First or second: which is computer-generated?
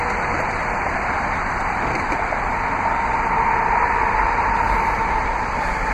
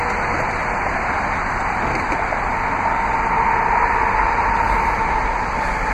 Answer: first